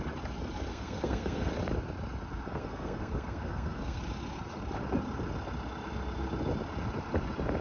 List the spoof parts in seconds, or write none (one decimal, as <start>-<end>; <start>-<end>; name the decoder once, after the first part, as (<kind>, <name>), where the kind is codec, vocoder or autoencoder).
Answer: 0.7-1.5 (codec, SNAC); 2.5-4.0

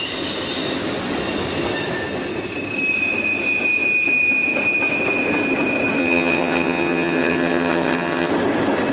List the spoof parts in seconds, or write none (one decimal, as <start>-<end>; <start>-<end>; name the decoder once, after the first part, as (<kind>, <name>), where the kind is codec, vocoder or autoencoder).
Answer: 6.0-8.3 (vocoder, HiFi-GAN)

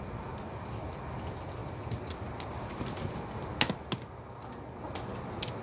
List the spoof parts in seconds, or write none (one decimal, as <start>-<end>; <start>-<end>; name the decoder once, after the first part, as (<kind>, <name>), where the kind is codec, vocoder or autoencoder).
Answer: none